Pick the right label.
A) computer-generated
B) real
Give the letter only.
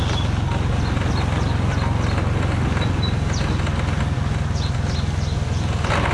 B